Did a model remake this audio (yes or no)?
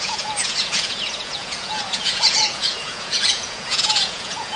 yes